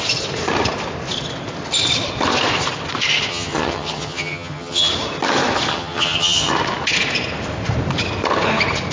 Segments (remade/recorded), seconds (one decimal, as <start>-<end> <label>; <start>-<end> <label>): 0.0-3.3 recorded; 3.3-4.9 remade; 4.9-5.7 recorded; 5.7-6.5 remade; 6.5-8.9 recorded